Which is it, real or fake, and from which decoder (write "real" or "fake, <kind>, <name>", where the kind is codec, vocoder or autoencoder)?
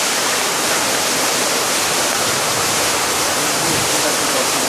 fake, vocoder, BigVGAN v2